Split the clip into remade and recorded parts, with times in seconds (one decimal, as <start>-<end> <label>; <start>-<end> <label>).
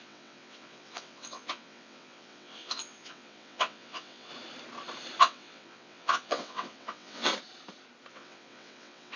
0.0-4.3 remade; 4.3-5.2 recorded; 5.2-7.3 remade; 7.3-8.1 recorded; 8.1-9.2 remade